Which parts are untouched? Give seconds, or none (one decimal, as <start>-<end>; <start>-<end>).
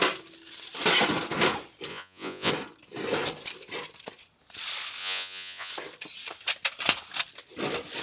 0.0-1.9; 2.5-5.0; 5.7-8.0